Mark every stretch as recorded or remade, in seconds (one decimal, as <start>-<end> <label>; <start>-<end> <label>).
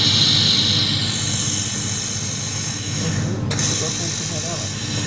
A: 0.0-2.5 recorded; 2.5-3.1 remade; 3.1-5.1 recorded